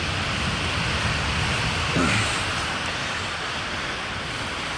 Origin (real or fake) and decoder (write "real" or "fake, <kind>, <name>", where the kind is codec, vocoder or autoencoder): real